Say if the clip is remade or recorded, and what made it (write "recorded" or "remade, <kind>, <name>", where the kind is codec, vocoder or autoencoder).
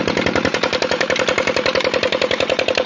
remade, vocoder, BigVGAN v2